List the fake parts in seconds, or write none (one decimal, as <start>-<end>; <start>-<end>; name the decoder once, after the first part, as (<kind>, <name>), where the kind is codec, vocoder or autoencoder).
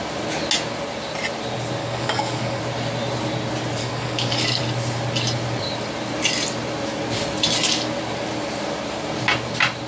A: 1.8-2.6 (codec, DAC); 3.8-4.6